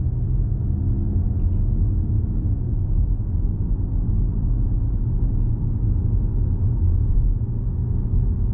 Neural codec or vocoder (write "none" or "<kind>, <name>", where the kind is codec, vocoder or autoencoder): none